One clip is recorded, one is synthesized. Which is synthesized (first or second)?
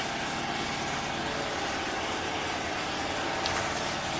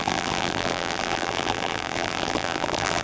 second